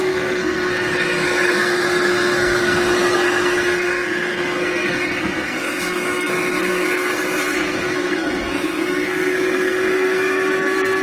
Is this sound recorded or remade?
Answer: remade